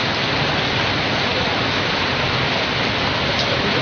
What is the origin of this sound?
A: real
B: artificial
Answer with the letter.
A